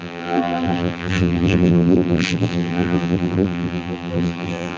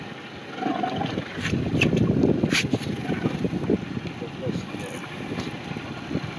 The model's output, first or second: first